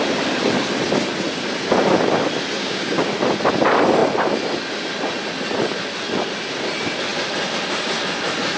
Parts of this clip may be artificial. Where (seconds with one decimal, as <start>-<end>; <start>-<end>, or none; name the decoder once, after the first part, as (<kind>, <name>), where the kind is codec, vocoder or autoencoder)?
2.6-3.1 (codec, DAC)